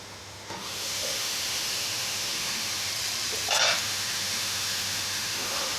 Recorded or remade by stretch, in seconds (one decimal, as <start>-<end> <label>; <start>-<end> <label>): 0.0-2.9 remade; 2.9-3.8 recorded; 3.8-5.8 remade